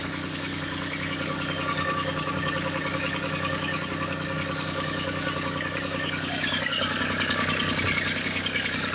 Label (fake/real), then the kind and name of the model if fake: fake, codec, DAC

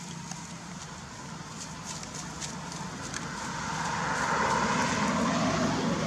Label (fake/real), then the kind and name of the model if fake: real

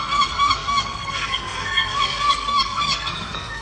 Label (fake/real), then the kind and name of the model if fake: fake, codec, SNAC